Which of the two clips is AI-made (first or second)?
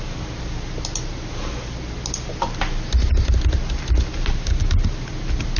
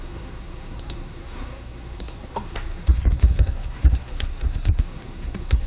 second